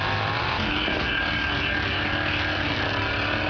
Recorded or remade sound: recorded